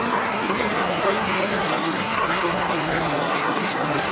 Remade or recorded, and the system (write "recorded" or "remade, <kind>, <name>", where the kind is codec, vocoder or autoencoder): remade, codec, SNAC